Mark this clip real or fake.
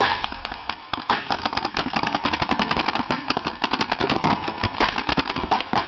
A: fake